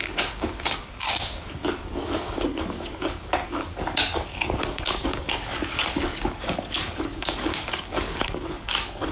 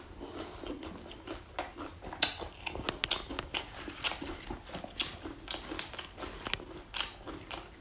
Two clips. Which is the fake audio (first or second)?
first